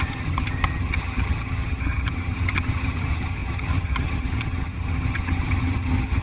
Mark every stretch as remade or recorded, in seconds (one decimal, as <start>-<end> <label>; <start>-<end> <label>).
0.0-6.2 remade